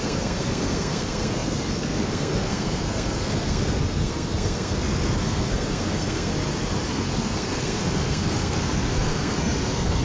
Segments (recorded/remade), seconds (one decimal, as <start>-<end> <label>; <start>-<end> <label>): 0.0-6.3 remade; 6.3-6.9 recorded; 6.9-10.0 remade